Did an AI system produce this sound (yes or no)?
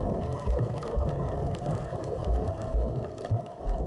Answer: yes